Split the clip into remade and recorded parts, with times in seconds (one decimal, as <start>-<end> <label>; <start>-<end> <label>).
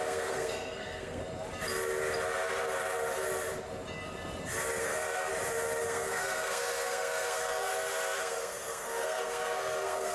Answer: 0.0-1.2 remade; 1.2-4.8 recorded; 4.8-5.3 remade; 5.3-5.8 recorded; 5.8-7.7 remade; 7.7-8.2 recorded; 8.2-10.1 remade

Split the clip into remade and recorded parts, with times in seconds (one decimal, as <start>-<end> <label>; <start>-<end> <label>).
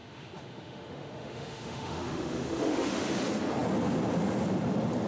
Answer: 0.0-3.1 remade; 3.1-5.1 recorded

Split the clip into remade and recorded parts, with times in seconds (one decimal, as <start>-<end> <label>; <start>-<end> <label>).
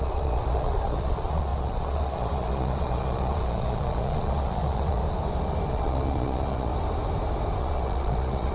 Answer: 0.0-5.0 remade; 5.0-5.7 recorded; 5.7-6.7 remade; 6.7-7.6 recorded; 7.6-8.5 remade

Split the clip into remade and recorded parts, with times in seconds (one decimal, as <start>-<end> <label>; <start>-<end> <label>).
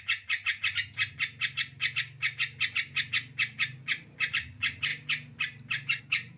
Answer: 0.0-6.4 recorded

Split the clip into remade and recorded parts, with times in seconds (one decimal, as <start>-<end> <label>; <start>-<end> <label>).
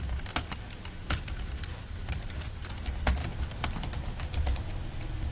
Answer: 0.0-1.0 recorded; 1.0-2.7 remade; 2.7-3.2 recorded; 3.2-4.6 remade; 4.6-5.3 recorded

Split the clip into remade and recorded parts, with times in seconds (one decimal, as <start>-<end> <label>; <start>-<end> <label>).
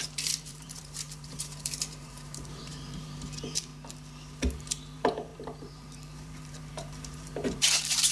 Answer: 0.0-3.7 remade; 3.7-4.7 recorded; 4.7-8.1 remade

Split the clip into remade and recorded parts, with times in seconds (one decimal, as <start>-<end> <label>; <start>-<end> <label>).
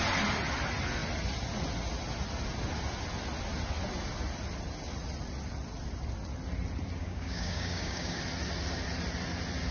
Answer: 0.0-7.0 recorded; 7.0-8.2 remade; 8.2-9.7 recorded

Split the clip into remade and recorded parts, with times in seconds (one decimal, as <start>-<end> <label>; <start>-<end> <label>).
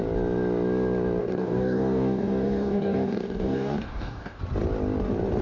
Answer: 0.0-1.2 recorded; 1.2-4.4 remade; 4.4-5.4 recorded